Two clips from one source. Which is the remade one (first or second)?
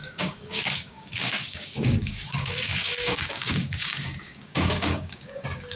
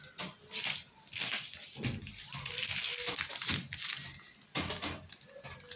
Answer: first